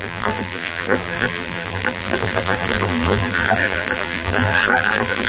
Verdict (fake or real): fake